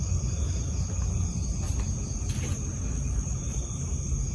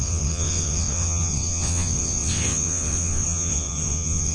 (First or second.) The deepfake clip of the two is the second